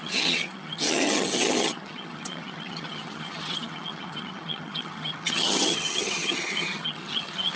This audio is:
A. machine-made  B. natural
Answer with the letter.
A